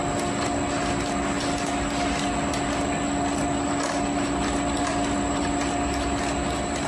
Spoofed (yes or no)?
no